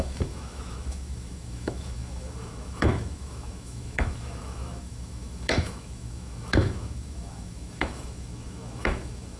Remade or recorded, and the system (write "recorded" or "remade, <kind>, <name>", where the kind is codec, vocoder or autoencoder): remade, autoencoder, DAC-VAE